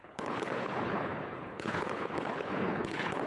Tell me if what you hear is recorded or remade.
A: remade